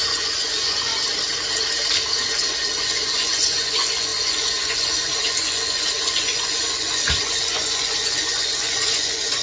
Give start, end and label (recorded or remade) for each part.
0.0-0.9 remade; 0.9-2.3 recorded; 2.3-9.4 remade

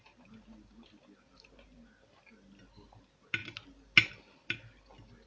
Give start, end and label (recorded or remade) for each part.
0.0-5.3 recorded

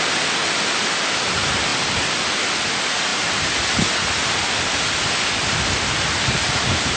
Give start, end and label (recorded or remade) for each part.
0.0-7.0 recorded

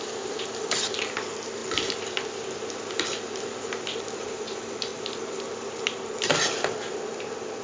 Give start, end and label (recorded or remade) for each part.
0.0-7.6 recorded

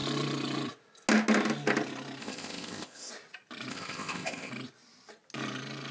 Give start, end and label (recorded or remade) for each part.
0.0-2.2 recorded; 2.2-3.1 remade; 3.1-3.7 recorded; 3.7-4.5 remade; 4.5-5.9 recorded

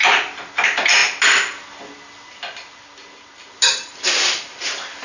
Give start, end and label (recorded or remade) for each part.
0.0-5.0 recorded

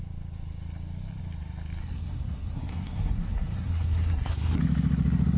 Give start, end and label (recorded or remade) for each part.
0.0-1.8 recorded; 1.8-4.6 remade; 4.6-5.4 recorded